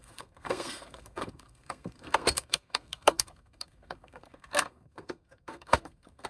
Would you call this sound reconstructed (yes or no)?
yes